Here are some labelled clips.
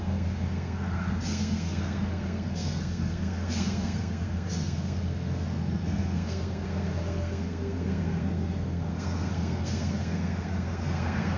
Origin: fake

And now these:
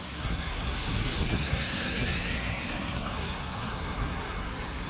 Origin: fake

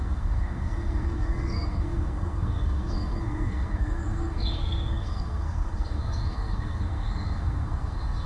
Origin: fake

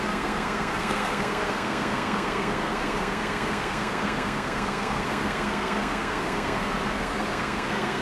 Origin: fake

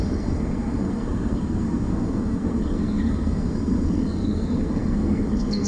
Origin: fake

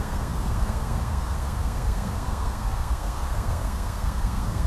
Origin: fake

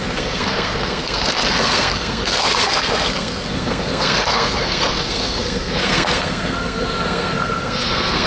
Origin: fake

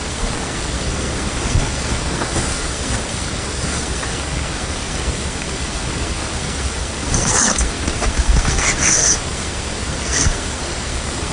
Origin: fake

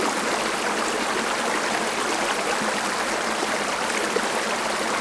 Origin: real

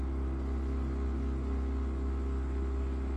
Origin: real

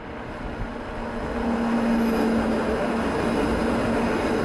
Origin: real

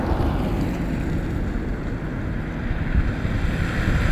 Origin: real